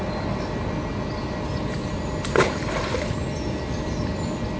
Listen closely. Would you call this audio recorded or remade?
recorded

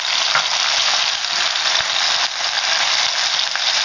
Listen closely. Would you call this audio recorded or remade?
recorded